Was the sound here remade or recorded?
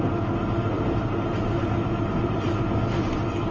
recorded